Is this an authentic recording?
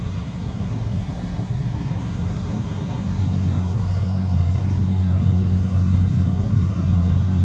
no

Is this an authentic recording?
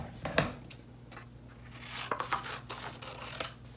yes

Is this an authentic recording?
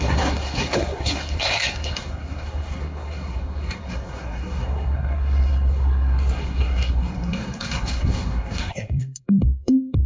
no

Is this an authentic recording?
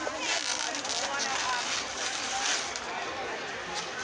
yes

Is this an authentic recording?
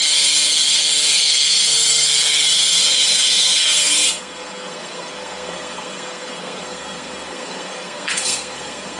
no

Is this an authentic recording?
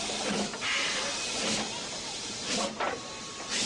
yes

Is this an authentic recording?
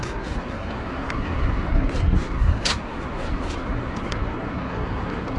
no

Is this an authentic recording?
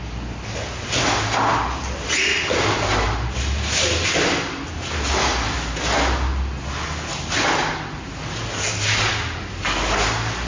yes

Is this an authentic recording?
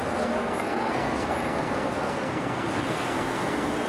no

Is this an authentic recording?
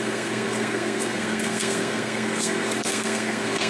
no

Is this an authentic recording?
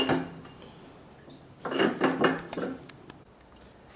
yes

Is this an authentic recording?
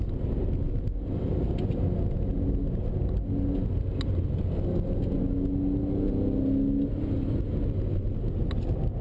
yes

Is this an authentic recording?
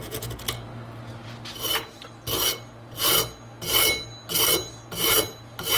yes